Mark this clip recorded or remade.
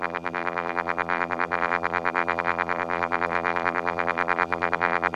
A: remade